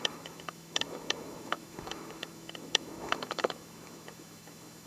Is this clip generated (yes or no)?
yes